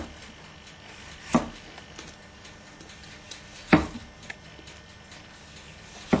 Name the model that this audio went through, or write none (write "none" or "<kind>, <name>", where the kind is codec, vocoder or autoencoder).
none